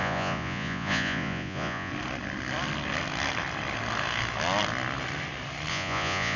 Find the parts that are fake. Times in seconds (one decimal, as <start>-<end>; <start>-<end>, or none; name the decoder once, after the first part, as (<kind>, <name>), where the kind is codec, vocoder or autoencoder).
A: 0.0-1.9 (vocoder, Vocos); 5.7-6.4